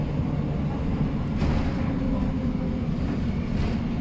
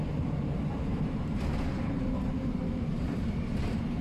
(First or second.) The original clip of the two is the first